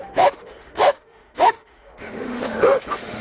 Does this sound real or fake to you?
fake